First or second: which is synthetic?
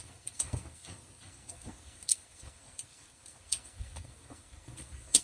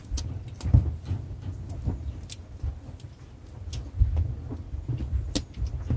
first